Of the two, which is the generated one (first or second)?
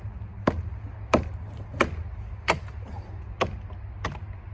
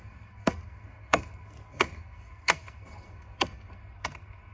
second